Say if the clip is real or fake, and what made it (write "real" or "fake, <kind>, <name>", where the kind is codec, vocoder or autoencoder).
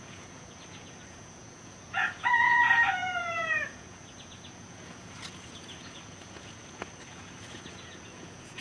fake, vocoder, Vocos